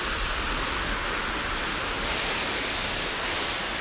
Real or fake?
real